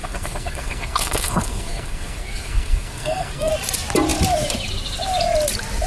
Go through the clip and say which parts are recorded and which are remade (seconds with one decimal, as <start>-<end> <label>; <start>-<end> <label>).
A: 0.0-3.5 remade; 3.5-5.9 recorded